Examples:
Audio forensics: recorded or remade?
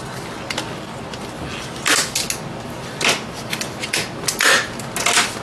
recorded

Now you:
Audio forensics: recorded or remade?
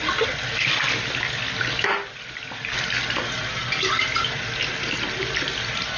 recorded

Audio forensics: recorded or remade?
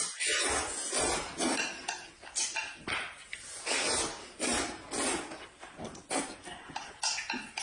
recorded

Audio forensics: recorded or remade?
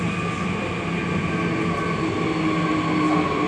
recorded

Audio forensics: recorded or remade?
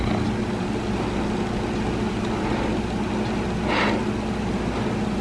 recorded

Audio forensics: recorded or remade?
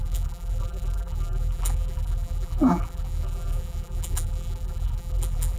remade